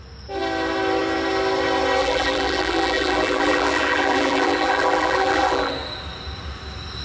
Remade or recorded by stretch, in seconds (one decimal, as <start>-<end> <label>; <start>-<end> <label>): 0.0-2.0 recorded; 2.0-5.7 remade; 5.7-7.0 recorded